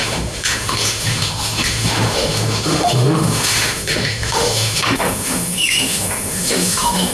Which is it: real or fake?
fake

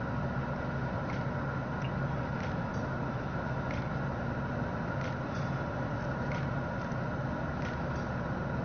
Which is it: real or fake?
real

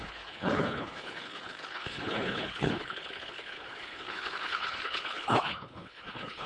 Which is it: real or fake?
fake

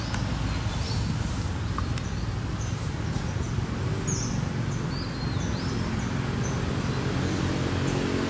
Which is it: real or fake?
real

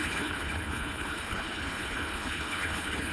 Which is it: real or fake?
fake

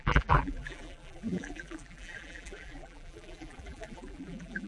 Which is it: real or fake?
fake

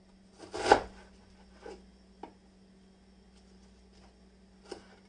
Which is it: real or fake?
real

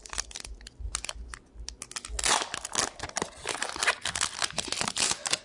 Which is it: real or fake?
real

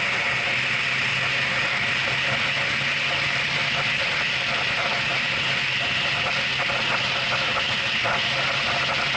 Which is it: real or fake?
real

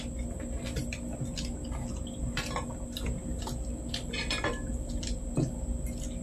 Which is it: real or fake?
real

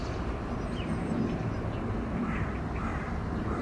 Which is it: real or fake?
fake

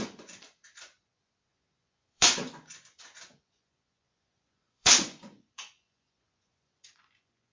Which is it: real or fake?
fake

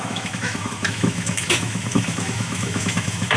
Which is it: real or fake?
fake